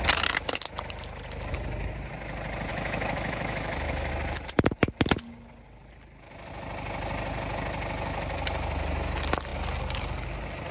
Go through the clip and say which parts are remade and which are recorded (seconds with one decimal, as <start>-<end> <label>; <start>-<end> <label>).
0.0-2.7 recorded; 2.7-4.1 remade; 4.1-10.7 recorded